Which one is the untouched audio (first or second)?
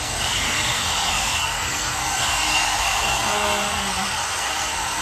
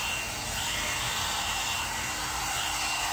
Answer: second